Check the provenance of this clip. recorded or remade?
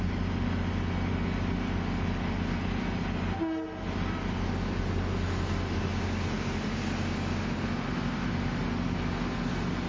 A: recorded